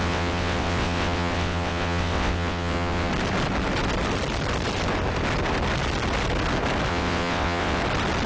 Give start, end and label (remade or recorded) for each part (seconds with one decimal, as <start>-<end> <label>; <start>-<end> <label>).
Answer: 0.0-3.1 remade; 3.1-6.9 recorded; 6.9-7.8 remade; 7.8-8.3 recorded